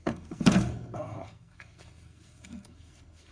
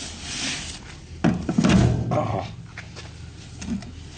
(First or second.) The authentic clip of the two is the second